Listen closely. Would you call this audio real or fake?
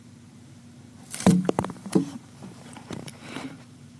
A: fake